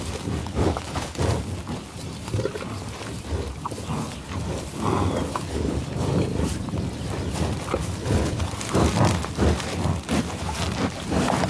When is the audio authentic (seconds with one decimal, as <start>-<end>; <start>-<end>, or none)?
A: 0.0-0.4; 1.2-5.3; 5.8-8.0; 8.5-11.5